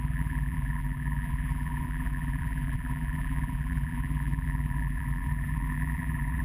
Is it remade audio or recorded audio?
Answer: remade